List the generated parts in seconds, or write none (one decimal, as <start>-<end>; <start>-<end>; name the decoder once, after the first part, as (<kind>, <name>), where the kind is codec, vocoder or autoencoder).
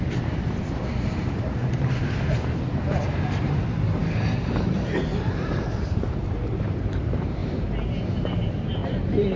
0.0-1.6 (vocoder, BigVGAN v2); 3.1-4.0; 4.7-7.4; 8.4-9.4